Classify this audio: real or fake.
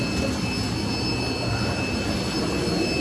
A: real